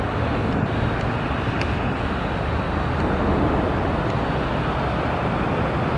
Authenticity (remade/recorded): recorded